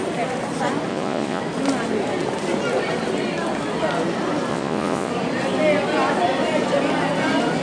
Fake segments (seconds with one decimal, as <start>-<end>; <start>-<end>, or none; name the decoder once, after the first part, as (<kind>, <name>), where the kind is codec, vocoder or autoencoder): 0.9-1.4 (vocoder, Vocos); 4.5-5.1